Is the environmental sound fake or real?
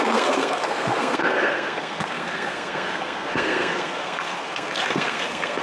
fake